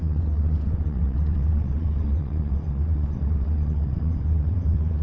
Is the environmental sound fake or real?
fake